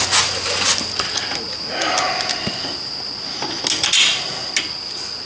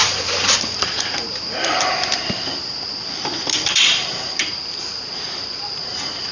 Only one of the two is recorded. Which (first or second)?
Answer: first